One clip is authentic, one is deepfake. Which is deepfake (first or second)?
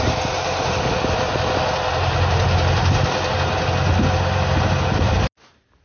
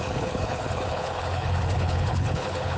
second